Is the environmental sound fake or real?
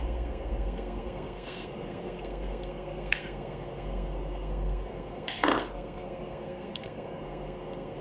fake